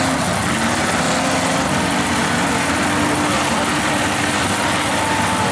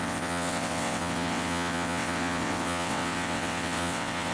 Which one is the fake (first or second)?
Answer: second